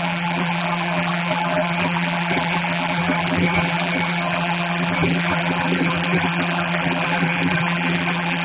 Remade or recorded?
remade